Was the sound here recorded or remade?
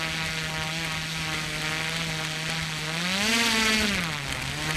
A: recorded